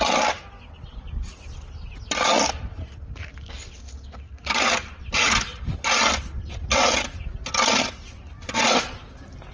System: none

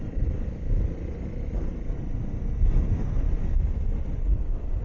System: none